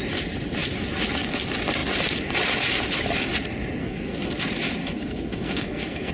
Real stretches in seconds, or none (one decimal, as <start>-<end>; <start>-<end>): 0.0-3.8; 4.3-4.8